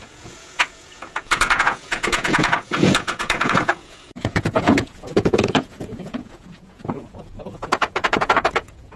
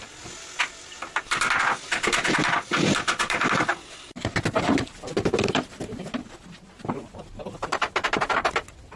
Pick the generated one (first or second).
first